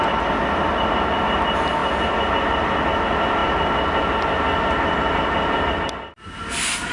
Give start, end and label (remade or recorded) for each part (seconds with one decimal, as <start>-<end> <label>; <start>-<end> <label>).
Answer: 0.0-6.9 recorded